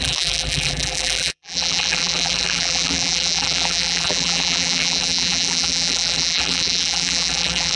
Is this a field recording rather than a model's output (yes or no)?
no